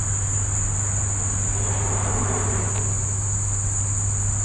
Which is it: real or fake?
real